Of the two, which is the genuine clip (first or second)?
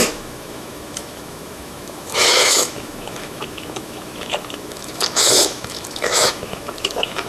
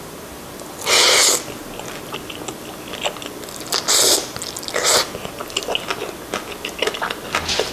second